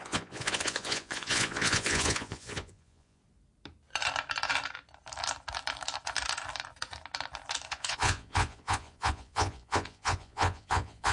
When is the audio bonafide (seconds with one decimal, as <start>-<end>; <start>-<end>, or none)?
3.2-7.7